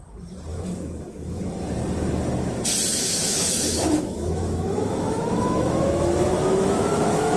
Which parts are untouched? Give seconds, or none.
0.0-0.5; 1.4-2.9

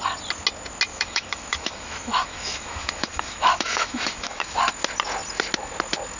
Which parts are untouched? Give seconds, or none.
0.0-0.9; 4.6-6.2

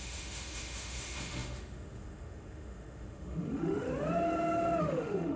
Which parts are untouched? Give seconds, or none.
3.9-4.8

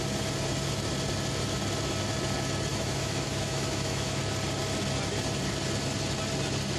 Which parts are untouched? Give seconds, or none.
0.0-2.7; 4.2-6.8